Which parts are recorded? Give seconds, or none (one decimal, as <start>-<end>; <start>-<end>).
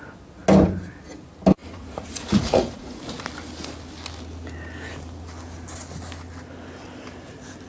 0.0-1.6; 3.0-7.7